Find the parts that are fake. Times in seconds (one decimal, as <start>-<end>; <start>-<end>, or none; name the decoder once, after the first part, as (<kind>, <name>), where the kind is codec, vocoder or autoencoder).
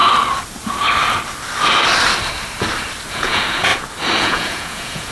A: 3.1-3.7 (vocoder, Vocos); 4.2-5.1